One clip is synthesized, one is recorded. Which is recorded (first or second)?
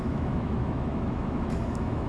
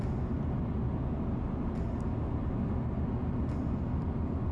second